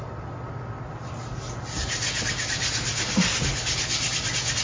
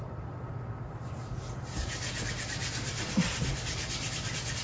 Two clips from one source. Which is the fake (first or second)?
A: second